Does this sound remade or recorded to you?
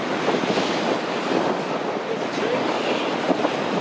recorded